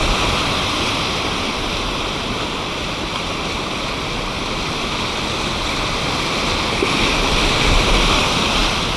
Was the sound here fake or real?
real